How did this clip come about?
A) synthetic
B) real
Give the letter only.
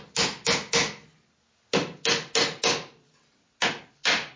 B